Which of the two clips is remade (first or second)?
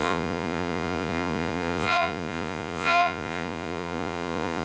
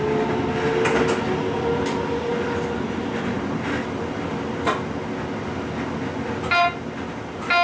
first